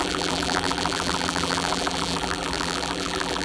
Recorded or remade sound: remade